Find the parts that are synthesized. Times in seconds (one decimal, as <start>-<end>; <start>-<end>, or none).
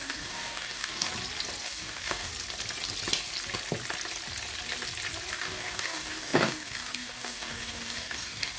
0.0-1.1; 1.6-2.3; 5.3-8.6